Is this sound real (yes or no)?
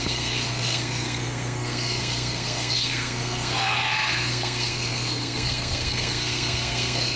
no